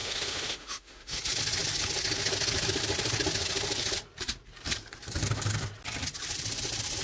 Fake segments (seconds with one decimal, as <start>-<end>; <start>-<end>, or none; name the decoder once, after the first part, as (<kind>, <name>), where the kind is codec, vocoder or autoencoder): 0.0-1.2 (autoencoder, DAC-VAE)